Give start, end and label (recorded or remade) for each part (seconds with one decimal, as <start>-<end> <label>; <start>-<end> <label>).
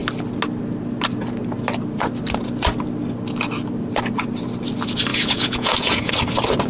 0.0-5.1 recorded; 5.1-6.1 remade; 6.1-6.7 recorded